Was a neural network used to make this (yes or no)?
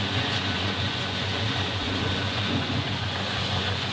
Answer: yes